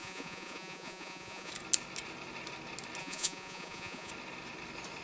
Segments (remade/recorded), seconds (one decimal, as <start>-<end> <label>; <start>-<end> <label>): 0.0-1.5 remade; 1.5-3.0 recorded; 3.0-4.1 remade; 4.1-5.0 recorded